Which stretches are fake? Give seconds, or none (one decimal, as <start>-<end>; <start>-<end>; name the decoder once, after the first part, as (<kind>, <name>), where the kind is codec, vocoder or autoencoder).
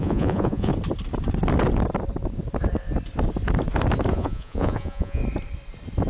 0.0-0.7 (vocoder, Vocos); 4.1-5.2